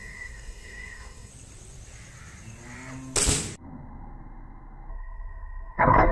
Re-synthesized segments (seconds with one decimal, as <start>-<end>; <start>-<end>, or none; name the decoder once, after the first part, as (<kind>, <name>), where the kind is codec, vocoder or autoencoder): 0.0-1.3 (codec, SNAC); 4.9-6.1